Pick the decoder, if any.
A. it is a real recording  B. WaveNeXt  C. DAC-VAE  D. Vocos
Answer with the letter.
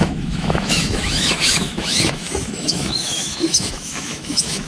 C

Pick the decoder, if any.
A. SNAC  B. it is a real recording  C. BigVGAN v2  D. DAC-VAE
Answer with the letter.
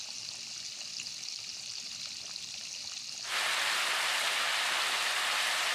B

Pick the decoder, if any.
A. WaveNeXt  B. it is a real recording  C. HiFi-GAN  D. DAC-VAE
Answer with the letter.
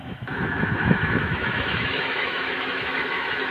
D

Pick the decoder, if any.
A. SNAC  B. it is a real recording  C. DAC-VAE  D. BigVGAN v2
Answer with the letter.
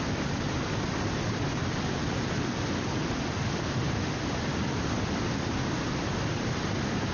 B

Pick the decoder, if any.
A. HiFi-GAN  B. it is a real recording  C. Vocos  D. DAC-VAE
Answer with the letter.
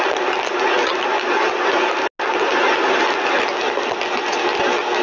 B